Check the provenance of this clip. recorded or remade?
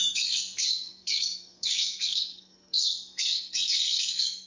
remade